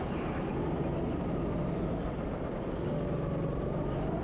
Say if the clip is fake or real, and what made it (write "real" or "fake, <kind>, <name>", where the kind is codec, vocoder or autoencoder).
real